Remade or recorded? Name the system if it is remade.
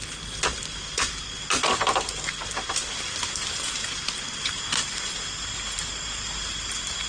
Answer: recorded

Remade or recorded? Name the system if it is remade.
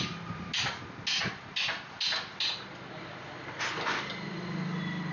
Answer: recorded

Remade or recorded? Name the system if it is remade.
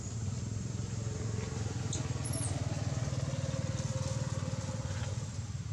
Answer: recorded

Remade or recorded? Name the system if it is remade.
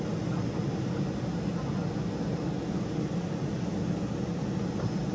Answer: recorded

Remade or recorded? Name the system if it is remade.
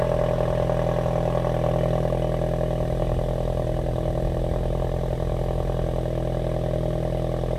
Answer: recorded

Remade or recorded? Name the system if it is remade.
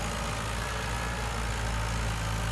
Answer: recorded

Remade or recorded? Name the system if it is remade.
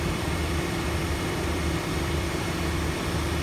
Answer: remade, vocoder, BigVGAN v2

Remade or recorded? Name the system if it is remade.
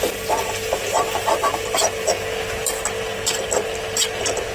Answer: recorded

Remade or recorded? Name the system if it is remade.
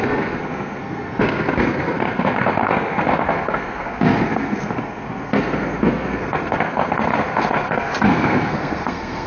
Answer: remade, codec, SNAC